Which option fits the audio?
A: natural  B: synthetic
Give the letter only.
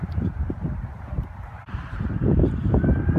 B